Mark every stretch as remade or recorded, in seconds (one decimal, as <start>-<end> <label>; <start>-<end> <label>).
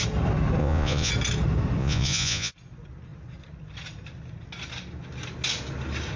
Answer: 0.0-0.6 recorded; 0.6-1.1 remade; 1.1-1.8 recorded; 1.8-2.5 remade; 2.5-6.2 recorded